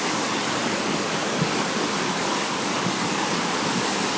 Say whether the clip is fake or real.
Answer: fake